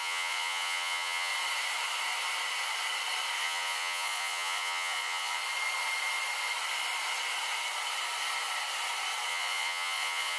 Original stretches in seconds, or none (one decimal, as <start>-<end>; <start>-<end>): 1.3-3.4; 5.4-9.3